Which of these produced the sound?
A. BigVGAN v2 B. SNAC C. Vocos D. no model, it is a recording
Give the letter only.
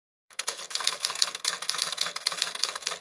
B